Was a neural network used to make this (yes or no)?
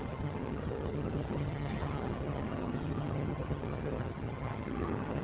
yes